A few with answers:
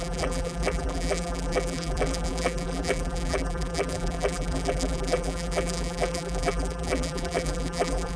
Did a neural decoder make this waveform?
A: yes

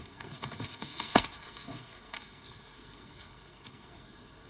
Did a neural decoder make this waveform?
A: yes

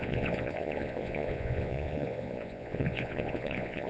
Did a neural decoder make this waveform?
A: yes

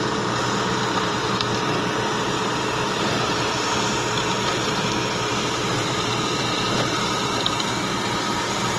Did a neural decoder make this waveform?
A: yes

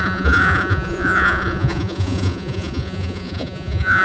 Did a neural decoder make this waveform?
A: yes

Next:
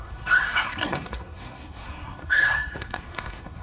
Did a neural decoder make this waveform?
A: yes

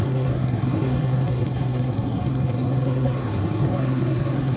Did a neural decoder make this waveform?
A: yes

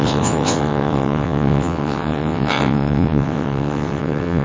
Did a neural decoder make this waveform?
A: yes